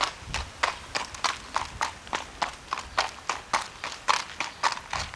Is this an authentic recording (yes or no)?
yes